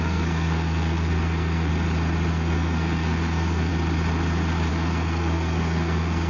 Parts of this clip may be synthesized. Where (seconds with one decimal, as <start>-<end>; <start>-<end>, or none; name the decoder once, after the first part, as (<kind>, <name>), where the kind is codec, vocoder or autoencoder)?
0.0-1.7 (codec, SNAC); 2.3-3.7; 4.7-6.3